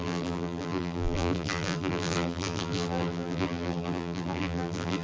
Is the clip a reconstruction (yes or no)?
yes